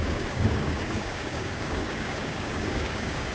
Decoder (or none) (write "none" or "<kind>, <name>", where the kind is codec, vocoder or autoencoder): codec, DAC